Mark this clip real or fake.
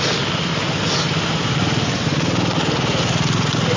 real